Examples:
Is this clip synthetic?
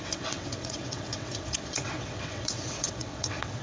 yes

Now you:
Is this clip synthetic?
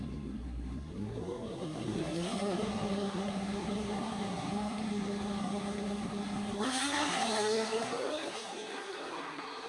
yes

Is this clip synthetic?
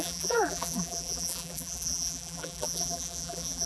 yes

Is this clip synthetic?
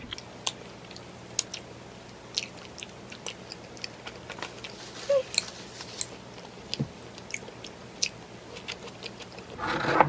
no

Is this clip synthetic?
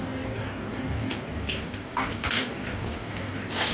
yes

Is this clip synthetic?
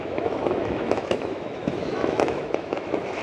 yes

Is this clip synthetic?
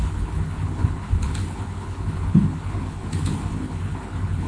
yes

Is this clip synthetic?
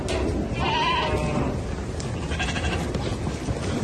no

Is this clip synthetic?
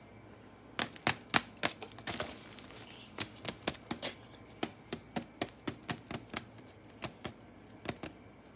no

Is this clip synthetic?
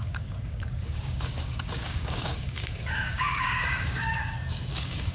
yes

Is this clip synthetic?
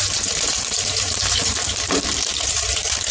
yes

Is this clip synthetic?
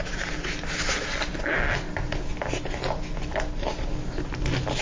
no